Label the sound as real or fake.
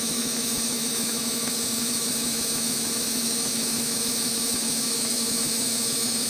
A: fake